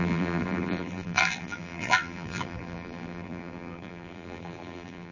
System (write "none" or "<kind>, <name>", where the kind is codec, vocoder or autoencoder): vocoder, BigVGAN v2